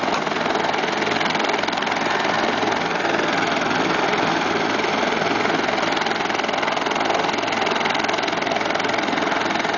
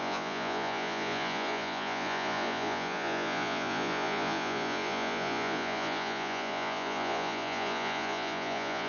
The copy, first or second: second